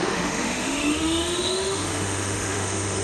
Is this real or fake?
fake